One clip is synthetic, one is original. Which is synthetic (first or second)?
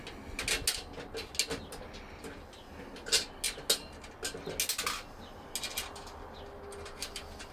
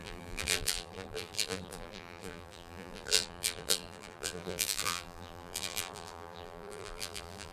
second